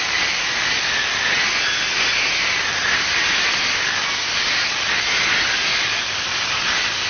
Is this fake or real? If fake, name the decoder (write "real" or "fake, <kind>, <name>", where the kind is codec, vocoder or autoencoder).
real